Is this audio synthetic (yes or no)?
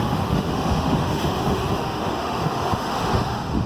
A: yes